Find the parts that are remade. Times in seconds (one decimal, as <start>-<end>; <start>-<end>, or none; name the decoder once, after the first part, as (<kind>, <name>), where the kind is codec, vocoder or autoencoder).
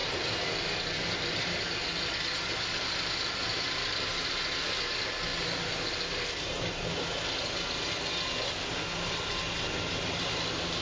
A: 0.0-4.3 (vocoder, BigVGAN v2)